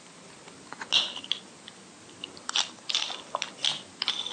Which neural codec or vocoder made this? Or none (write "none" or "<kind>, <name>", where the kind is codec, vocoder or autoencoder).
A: none